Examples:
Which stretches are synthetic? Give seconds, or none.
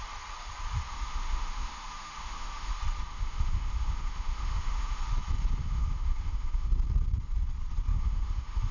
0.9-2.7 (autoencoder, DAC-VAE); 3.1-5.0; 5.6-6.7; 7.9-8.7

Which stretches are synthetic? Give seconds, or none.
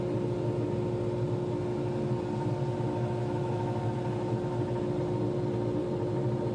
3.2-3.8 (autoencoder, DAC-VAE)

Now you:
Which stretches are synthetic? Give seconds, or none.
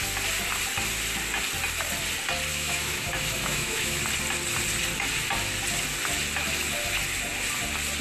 2.5-4.0 (autoencoder, DAC-VAE)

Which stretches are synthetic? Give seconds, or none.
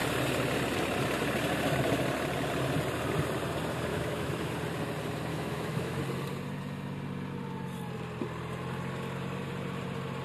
3.9-4.5 (autoencoder, DAC-VAE); 5.3-6.0